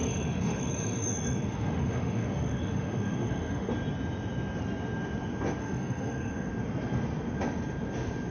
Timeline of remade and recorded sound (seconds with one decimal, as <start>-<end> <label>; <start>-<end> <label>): 0.0-3.7 remade; 3.7-5.6 recorded; 5.6-6.5 remade; 6.5-8.3 recorded